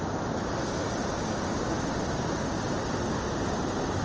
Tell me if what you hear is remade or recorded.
recorded